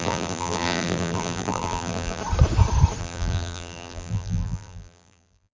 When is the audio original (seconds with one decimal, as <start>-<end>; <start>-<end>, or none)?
2.2-3.0